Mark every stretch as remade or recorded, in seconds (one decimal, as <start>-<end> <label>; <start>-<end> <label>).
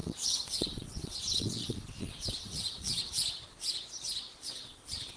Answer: 0.0-3.1 remade; 3.1-4.3 recorded; 4.3-5.2 remade